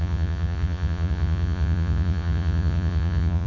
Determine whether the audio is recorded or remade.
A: remade